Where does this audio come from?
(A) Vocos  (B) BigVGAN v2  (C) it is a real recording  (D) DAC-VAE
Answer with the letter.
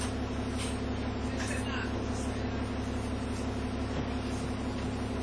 C